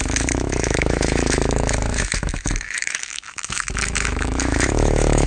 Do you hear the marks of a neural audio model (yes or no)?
yes